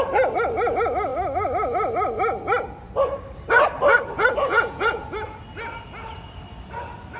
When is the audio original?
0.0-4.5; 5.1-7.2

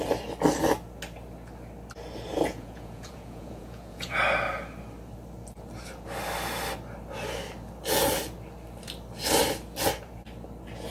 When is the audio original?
0.0-2.3; 4.2-10.9

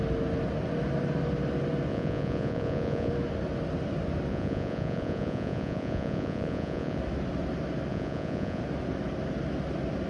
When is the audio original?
0.0-1.9; 3.1-4.3; 7.0-7.9; 8.6-10.1

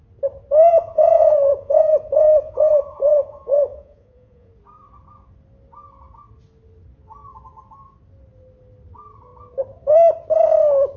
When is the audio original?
0.0-0.7; 4.5-11.0

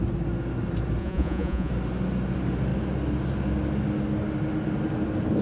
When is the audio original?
0.0-1.0; 1.7-5.4

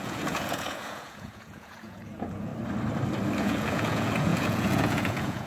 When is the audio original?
2.5-3.4

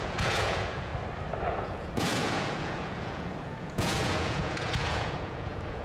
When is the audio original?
0.9-1.6

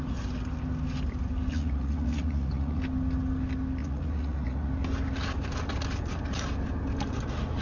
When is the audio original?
0.0-1.5; 2.8-3.8; 4.7-7.6